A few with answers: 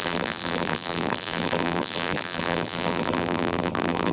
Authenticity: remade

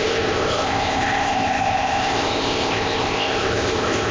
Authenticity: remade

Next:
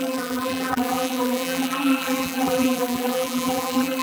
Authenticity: remade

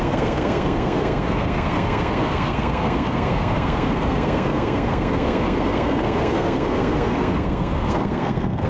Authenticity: remade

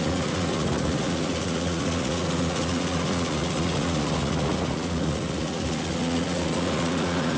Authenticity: remade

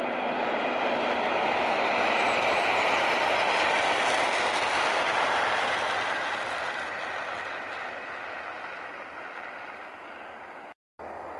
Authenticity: recorded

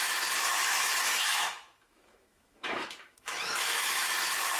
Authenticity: remade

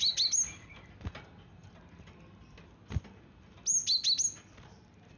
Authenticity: recorded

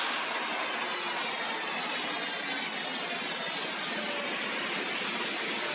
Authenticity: recorded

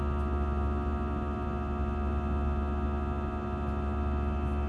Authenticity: recorded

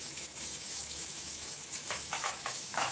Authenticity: remade